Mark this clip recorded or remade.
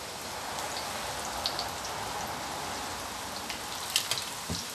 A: recorded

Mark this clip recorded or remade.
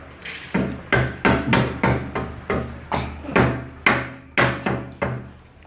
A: recorded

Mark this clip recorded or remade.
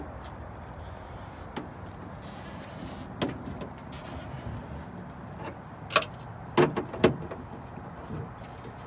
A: recorded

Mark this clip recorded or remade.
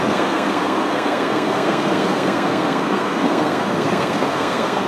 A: remade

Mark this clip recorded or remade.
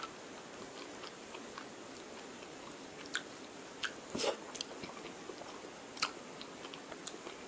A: recorded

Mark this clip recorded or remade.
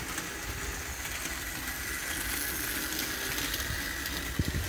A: recorded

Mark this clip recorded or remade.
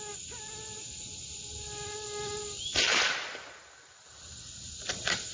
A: recorded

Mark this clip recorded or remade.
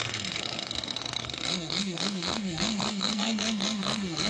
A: remade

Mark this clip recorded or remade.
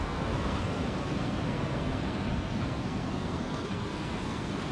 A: remade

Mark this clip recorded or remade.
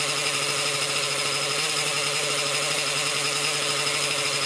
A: recorded